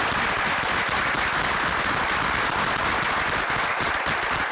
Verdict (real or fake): real